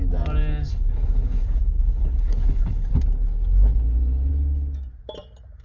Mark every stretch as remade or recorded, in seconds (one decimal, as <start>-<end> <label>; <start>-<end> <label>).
0.0-0.7 recorded; 0.7-2.9 remade; 2.9-5.6 recorded